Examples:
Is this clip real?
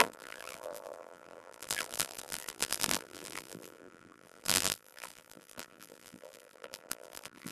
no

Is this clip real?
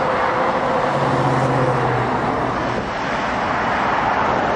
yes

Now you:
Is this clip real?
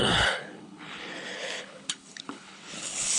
no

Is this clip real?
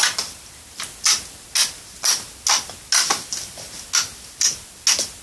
yes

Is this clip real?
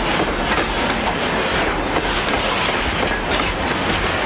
yes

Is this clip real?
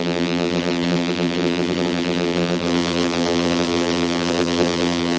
no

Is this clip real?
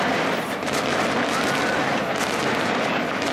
yes